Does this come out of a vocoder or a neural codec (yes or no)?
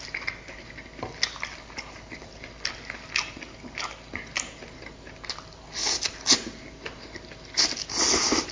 no